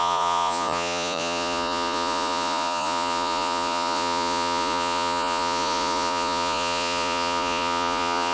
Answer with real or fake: fake